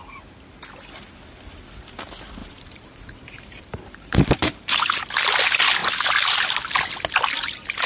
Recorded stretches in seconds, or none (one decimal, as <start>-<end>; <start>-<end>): 0.0-2.4; 5.0-7.9